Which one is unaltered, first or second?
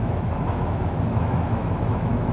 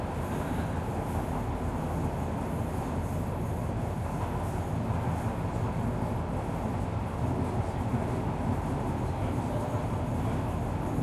second